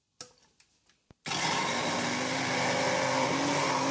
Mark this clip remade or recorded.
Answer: recorded